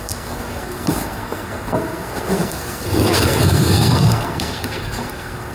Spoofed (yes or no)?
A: yes